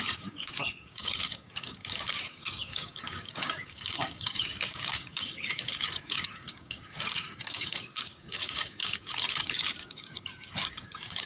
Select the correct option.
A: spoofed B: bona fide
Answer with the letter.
A